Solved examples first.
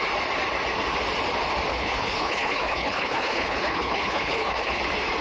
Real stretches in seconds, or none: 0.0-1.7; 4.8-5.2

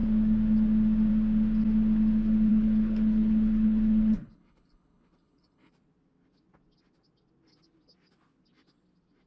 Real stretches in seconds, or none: 0.0-2.5; 5.7-9.3

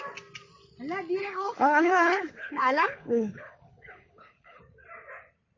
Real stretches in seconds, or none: 0.0-1.2; 4.6-5.6

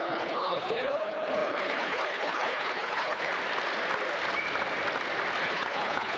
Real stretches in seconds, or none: 3.3-5.4

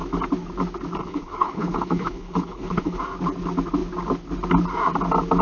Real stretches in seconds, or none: 0.0-1.0; 3.0-5.4

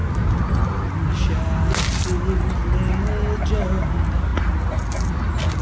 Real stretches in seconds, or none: 0.0-5.6

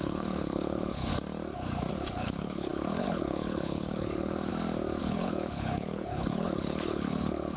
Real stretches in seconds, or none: 1.1-1.9; 4.5-5.0